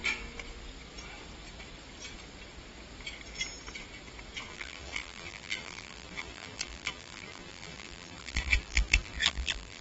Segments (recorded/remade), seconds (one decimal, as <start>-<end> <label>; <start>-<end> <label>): 0.0-4.5 recorded; 4.5-9.8 remade